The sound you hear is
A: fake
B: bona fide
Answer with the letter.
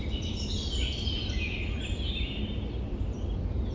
B